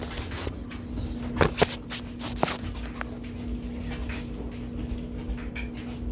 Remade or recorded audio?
recorded